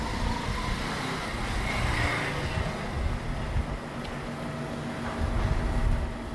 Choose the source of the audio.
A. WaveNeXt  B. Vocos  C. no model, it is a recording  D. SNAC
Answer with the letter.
C